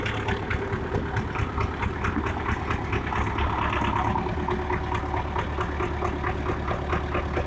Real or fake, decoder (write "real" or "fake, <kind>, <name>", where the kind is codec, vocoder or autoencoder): real